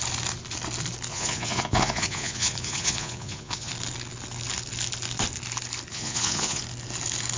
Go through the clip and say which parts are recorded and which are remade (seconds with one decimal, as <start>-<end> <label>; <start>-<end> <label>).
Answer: 0.0-1.1 recorded; 1.1-3.7 remade; 3.7-5.9 recorded; 5.9-6.6 remade; 6.6-7.4 recorded